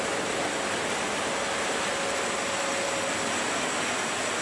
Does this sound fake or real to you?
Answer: real